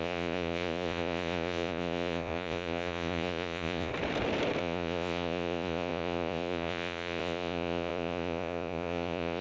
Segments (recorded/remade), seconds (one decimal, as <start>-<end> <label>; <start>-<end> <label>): 0.0-3.9 remade; 3.9-4.6 recorded; 4.6-9.4 remade